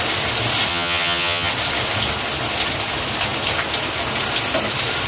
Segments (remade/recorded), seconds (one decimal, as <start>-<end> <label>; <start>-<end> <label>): 0.0-0.7 recorded; 0.7-1.5 remade; 1.5-5.1 recorded